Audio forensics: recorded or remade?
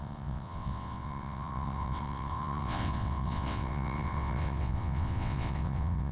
remade